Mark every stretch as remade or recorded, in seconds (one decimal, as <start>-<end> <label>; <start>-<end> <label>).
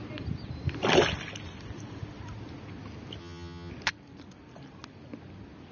0.0-3.2 recorded; 3.2-3.7 remade; 3.7-5.7 recorded